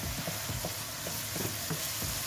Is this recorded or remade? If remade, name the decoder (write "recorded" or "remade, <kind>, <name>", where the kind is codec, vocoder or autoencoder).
recorded